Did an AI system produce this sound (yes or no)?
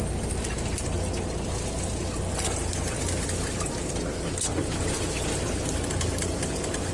no